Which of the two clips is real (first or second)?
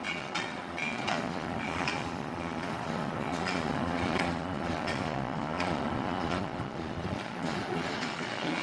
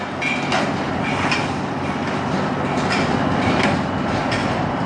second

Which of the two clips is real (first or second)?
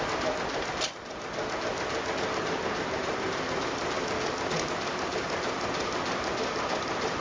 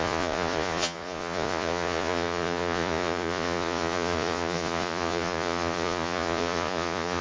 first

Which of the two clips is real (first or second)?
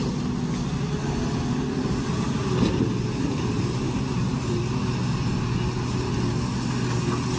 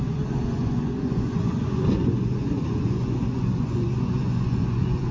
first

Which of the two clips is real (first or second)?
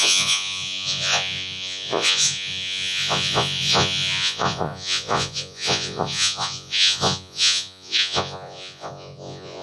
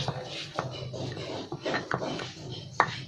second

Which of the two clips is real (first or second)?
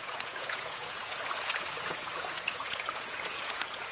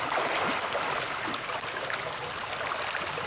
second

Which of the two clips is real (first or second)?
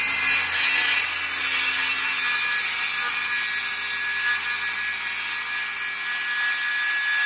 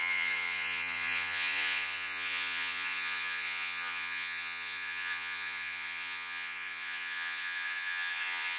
first